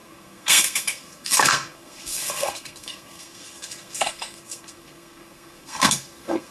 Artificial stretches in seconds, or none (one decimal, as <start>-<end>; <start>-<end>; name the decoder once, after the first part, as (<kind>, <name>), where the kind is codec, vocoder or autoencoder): 0.0-6.5 (codec, SNAC)